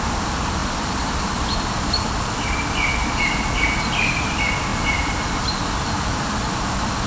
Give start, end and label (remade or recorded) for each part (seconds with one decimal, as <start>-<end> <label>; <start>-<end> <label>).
0.0-0.6 recorded; 0.6-2.2 remade; 2.2-4.7 recorded; 4.7-5.3 remade; 5.3-7.1 recorded

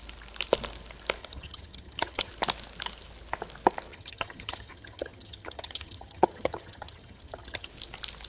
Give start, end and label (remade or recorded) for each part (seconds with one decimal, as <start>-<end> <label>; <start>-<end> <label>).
0.0-1.2 recorded; 1.2-2.3 remade; 2.3-3.9 recorded; 3.9-7.7 remade; 7.7-8.3 recorded

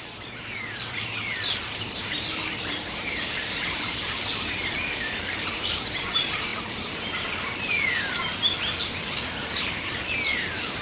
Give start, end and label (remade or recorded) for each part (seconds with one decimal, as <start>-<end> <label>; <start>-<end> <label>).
0.0-10.8 remade

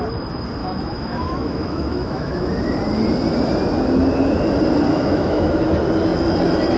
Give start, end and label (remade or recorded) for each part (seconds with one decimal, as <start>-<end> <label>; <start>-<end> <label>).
0.0-0.6 recorded; 0.6-2.5 remade; 2.5-4.9 recorded; 4.9-5.6 remade; 5.6-6.8 recorded

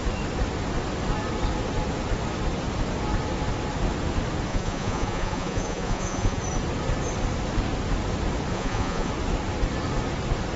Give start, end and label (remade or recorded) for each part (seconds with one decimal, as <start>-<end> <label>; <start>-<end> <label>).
0.0-4.5 recorded; 4.5-6.4 remade; 6.4-8.5 recorded; 8.5-9.1 remade; 9.1-10.6 recorded

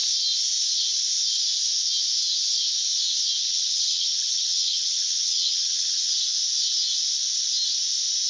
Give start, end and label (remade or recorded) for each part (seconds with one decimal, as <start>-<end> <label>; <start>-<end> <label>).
0.0-3.4 recorded; 3.4-6.2 remade; 6.2-8.3 recorded

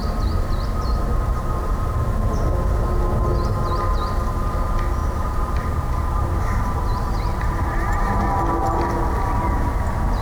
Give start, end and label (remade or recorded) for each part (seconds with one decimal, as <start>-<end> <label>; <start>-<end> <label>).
0.0-2.0 remade; 2.0-5.0 recorded; 5.0-8.1 remade; 8.1-10.2 recorded

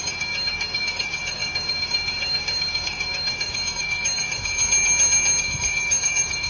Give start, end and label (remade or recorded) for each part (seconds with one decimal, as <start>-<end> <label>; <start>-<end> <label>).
0.0-4.6 remade; 4.6-5.4 recorded; 5.4-6.5 remade